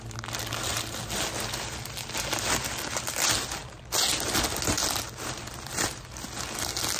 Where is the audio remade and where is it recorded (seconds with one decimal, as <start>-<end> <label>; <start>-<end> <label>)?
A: 0.0-7.0 recorded